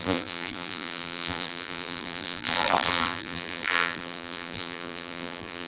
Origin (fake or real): fake